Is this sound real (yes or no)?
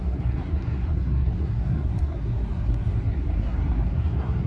no